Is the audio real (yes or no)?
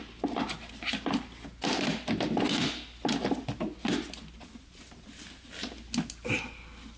yes